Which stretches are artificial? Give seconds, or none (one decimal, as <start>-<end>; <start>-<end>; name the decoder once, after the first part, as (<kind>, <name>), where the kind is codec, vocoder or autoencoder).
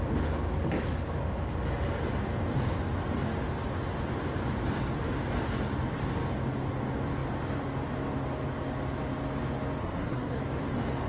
9.8-10.4 (codec, SNAC)